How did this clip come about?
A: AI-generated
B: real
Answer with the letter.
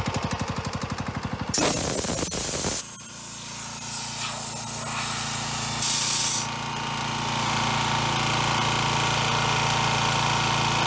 B